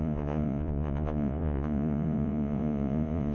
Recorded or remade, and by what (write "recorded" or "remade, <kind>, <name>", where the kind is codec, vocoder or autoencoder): remade, vocoder, Vocos